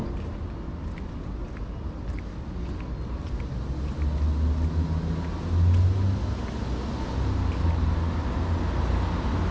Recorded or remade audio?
recorded